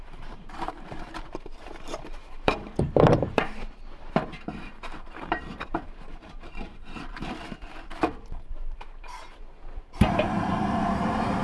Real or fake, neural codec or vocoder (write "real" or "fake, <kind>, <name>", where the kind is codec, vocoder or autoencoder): fake, vocoder, BigVGAN v2